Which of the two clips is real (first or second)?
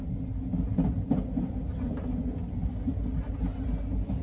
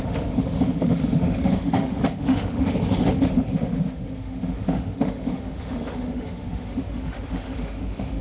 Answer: first